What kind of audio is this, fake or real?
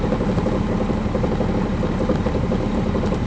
real